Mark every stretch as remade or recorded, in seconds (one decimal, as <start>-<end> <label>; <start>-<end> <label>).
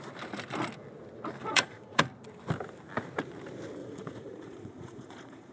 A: 0.0-1.4 recorded; 1.4-2.0 remade; 2.0-3.8 recorded; 3.8-5.5 remade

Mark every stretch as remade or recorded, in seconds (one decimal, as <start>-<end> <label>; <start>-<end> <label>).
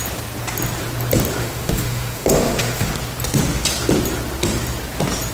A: 0.0-1.4 recorded; 1.4-2.9 remade; 2.9-5.3 recorded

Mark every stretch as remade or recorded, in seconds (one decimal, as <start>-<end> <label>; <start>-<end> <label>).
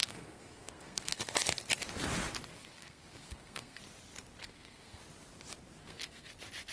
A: 0.0-1.2 remade; 1.2-2.5 recorded; 2.5-3.8 remade; 3.8-4.4 recorded; 4.4-5.0 remade; 5.0-5.8 recorded; 5.8-6.3 remade; 6.3-6.7 recorded